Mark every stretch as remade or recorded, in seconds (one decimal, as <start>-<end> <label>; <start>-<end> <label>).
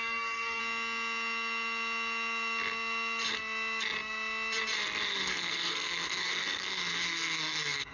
0.0-0.6 remade; 0.6-5.3 recorded; 5.3-7.9 remade